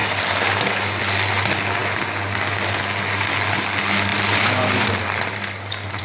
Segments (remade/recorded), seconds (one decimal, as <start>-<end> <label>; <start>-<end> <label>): 0.0-1.0 remade; 1.0-4.1 recorded; 4.1-6.0 remade